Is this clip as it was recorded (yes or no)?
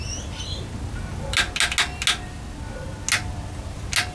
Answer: yes